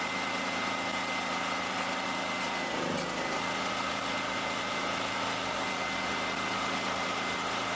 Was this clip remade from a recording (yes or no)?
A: no